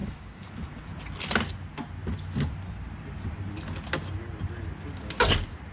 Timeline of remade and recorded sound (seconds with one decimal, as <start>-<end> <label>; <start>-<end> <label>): 0.0-0.5 remade; 0.5-5.7 recorded